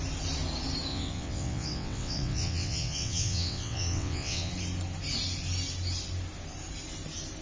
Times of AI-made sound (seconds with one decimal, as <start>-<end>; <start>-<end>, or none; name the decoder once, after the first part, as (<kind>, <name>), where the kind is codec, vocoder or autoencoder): 0.9-4.5 (vocoder, WaveNeXt)